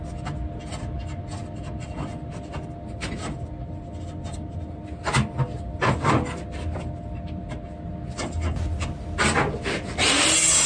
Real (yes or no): yes